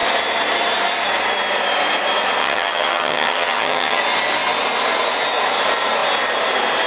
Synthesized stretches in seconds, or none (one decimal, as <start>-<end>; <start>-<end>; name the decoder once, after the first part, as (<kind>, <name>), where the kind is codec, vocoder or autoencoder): 2.4-4.0 (vocoder, HiFi-GAN)